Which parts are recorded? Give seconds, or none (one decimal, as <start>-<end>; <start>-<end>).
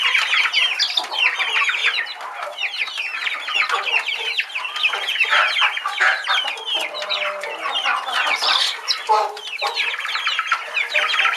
0.0-1.8; 3.3-7.9; 9.9-11.4